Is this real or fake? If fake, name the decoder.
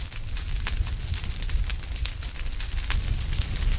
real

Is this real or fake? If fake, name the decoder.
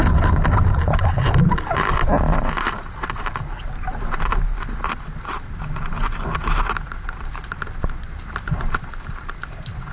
real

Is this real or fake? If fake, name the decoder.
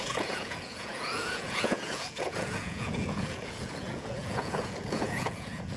fake, vocoder, Vocos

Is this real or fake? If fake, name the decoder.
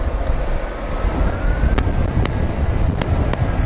real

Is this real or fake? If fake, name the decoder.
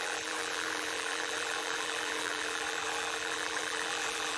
fake, vocoder, BigVGAN v2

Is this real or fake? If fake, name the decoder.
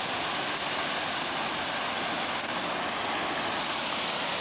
real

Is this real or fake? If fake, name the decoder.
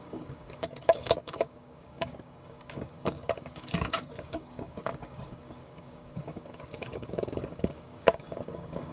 fake, codec, DAC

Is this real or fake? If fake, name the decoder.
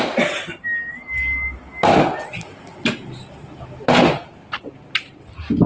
real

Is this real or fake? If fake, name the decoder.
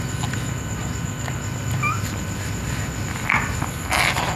real